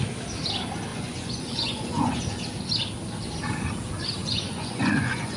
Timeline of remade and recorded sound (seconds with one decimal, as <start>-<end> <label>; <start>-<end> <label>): 0.0-0.9 recorded; 0.9-2.2 remade; 2.2-4.2 recorded; 4.2-5.4 remade